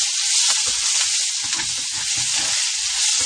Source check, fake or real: real